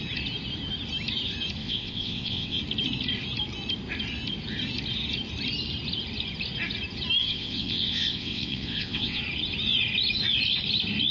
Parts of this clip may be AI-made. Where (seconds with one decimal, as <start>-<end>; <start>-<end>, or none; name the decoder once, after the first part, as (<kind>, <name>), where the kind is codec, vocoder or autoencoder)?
1.6-2.6 (vocoder, WaveNeXt); 7.2-9.2